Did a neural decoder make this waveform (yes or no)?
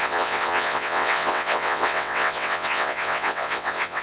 yes